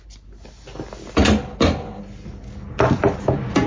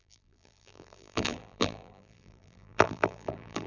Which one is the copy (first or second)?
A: second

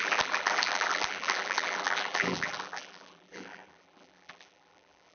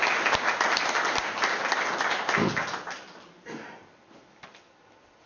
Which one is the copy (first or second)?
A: first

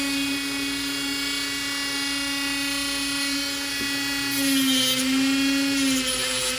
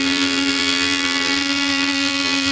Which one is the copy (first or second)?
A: second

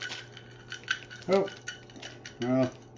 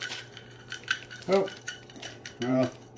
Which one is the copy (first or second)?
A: second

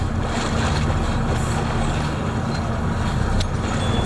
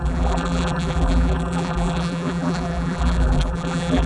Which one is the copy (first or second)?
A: second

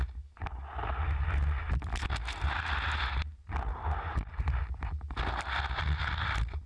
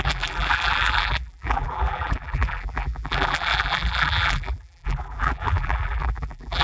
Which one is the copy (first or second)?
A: second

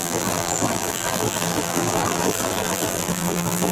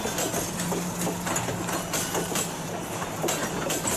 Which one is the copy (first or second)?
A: first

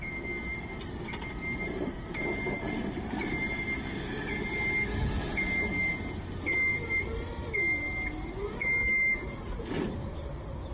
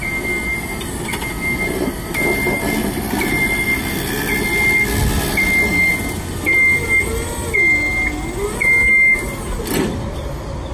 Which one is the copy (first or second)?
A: first